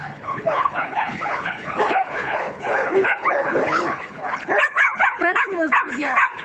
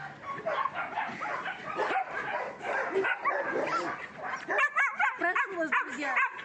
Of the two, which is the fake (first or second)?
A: first